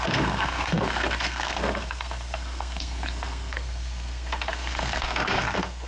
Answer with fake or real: fake